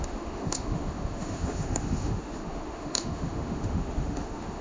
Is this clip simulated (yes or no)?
yes